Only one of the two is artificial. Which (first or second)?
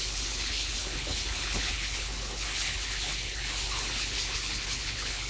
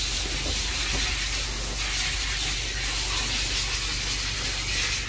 first